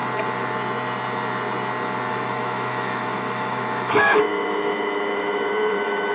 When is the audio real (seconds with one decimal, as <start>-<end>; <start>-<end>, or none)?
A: 0.0-2.1